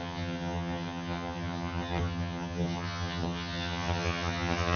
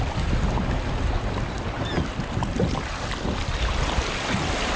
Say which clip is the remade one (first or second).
first